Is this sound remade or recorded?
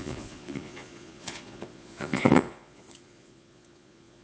remade